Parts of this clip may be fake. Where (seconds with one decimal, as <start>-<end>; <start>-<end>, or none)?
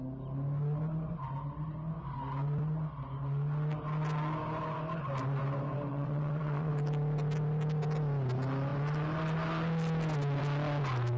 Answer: 5.9-6.7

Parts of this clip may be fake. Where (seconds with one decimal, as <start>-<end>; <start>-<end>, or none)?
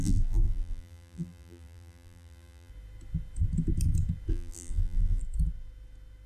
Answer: 0.0-2.7; 4.3-5.2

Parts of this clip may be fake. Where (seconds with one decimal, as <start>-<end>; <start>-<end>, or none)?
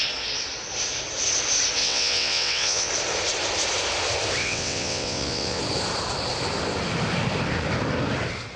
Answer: 1.8-2.9; 4.4-5.6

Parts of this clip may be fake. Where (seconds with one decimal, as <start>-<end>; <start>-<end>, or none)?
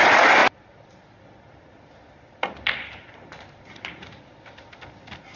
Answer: none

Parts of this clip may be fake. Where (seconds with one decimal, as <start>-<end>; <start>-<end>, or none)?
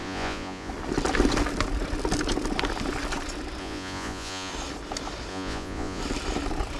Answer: 0.0-0.7; 3.6-4.5; 5.3-6.0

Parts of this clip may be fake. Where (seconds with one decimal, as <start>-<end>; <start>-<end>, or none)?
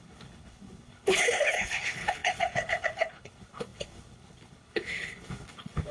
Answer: 0.0-5.9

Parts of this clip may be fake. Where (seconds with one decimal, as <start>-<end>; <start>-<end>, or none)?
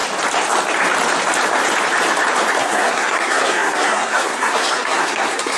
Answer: 2.6-5.6